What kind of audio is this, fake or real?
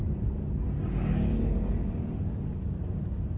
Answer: fake